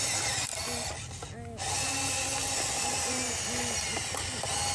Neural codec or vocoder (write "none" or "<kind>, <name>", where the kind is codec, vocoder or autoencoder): none